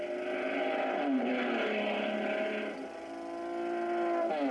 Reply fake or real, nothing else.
real